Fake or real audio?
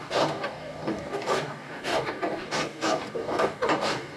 fake